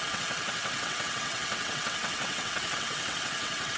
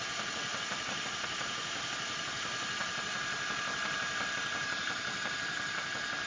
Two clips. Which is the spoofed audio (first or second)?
first